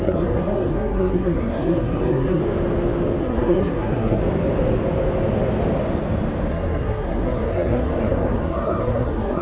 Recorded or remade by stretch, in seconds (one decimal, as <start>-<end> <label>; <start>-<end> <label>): 0.0-2.4 remade; 2.4-3.2 recorded; 3.2-4.2 remade; 4.2-6.5 recorded; 6.5-9.4 remade